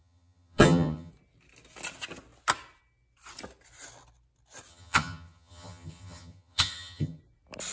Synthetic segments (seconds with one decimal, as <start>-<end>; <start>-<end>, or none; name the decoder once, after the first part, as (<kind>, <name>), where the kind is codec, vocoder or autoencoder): 0.0-1.1 (vocoder, HiFi-GAN); 4.7-7.2

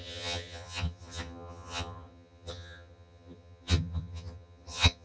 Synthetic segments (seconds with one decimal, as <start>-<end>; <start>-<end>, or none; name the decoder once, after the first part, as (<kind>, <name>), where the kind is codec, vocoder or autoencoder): 0.0-5.0 (vocoder, HiFi-GAN)

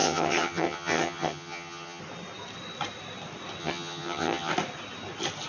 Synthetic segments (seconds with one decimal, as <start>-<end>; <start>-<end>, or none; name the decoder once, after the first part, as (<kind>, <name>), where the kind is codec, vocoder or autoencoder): 0.0-2.0 (vocoder, HiFi-GAN); 3.6-4.5

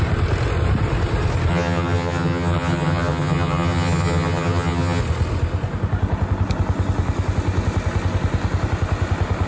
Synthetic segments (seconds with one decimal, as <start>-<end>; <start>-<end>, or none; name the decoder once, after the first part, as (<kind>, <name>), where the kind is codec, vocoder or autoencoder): 1.5-5.0 (vocoder, HiFi-GAN)

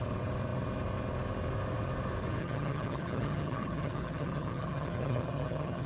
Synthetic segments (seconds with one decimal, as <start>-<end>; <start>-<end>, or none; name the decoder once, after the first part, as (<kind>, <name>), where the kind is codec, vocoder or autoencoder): 2.4-5.9 (vocoder, HiFi-GAN)

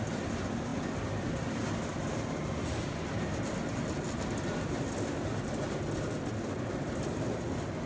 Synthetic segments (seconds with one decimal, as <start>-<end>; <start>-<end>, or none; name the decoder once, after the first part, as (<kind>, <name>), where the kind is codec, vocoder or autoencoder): none

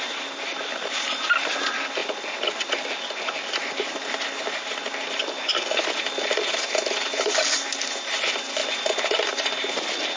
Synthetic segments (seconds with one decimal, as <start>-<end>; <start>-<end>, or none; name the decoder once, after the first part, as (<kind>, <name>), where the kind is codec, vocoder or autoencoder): none

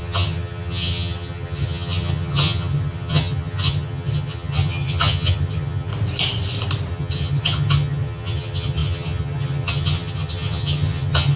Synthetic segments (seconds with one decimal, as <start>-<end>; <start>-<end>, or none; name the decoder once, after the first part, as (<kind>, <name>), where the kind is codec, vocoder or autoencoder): 0.0-5.9 (vocoder, HiFi-GAN); 6.9-11.4